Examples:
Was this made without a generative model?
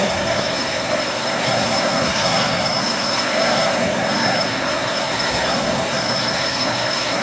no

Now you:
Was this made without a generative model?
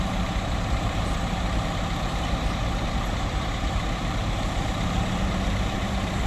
no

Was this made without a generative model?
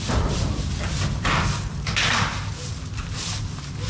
yes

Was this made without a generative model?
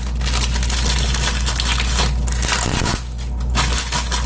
yes